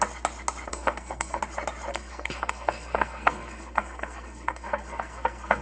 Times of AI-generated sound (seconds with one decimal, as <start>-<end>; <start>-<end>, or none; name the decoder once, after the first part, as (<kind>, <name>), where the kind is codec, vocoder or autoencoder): 0.7-1.4 (codec, SNAC); 1.9-5.6